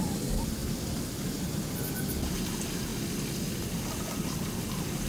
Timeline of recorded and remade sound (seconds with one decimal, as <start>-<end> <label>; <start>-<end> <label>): 0.0-5.1 recorded